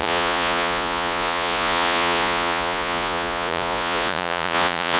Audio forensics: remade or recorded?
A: remade